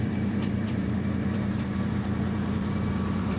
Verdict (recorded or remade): remade